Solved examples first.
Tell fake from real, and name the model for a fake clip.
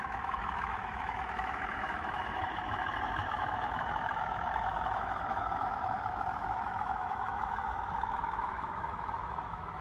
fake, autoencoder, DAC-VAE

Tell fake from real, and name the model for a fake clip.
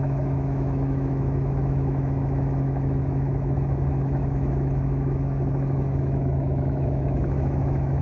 fake, autoencoder, DAC-VAE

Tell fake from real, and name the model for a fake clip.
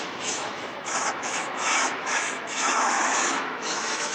fake, autoencoder, DAC-VAE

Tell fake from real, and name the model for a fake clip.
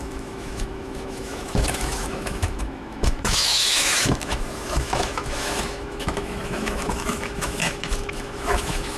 fake, autoencoder, DAC-VAE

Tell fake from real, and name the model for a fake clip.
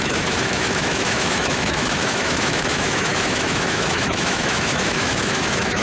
fake, autoencoder, DAC-VAE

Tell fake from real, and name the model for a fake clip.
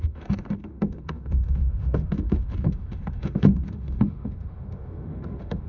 fake, autoencoder, DAC-VAE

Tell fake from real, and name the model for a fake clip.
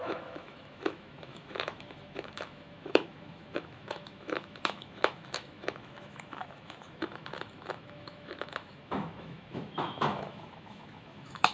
fake, autoencoder, DAC-VAE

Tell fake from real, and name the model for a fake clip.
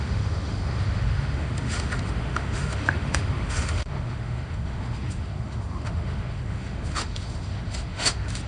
fake, autoencoder, DAC-VAE